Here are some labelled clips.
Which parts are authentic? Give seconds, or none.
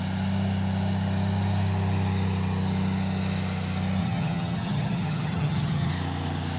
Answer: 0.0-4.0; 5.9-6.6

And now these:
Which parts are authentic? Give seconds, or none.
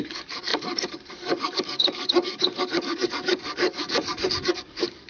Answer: none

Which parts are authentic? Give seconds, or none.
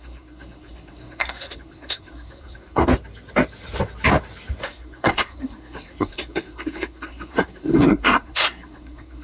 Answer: 2.8-4.6